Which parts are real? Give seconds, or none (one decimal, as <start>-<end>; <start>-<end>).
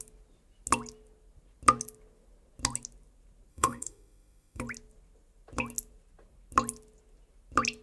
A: 0.0-3.5; 4.6-7.8